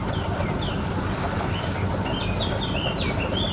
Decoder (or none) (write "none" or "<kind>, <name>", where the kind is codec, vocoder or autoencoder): none